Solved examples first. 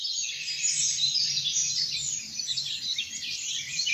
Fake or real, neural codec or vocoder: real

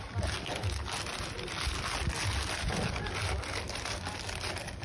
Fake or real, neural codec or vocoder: real